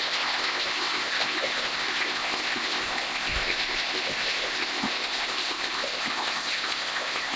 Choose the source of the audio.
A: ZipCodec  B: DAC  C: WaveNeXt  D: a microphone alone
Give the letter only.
A